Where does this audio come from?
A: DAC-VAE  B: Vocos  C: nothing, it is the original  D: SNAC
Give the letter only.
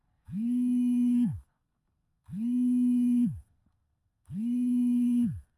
D